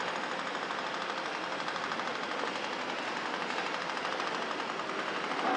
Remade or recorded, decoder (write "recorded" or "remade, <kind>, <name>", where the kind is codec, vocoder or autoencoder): recorded